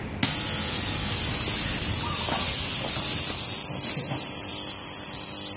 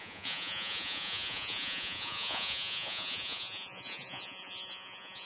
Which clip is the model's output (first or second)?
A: second